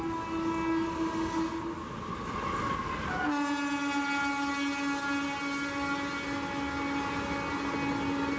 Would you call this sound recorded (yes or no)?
yes